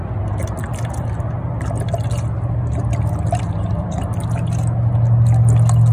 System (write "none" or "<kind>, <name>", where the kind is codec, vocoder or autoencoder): none